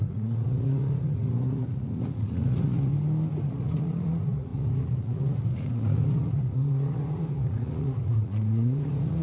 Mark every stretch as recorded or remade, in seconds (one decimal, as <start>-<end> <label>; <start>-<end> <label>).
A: 0.0-2.9 remade; 2.9-3.5 recorded; 3.5-9.2 remade